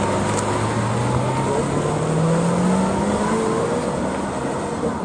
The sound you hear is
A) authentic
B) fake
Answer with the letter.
A